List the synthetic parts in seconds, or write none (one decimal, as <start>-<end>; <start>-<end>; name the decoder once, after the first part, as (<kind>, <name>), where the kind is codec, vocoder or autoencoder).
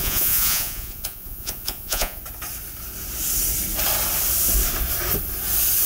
0.0-2.2 (vocoder, Vocos)